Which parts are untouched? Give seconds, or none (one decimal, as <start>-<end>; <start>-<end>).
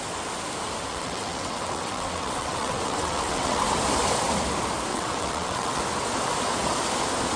0.0-0.9; 3.6-4.9; 5.8-7.4